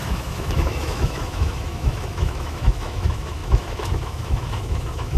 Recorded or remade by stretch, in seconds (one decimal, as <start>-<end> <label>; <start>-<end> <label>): 0.0-5.2 remade